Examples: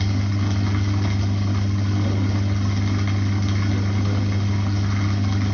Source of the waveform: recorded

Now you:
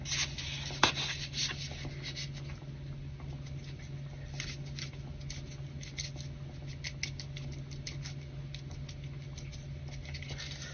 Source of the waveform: recorded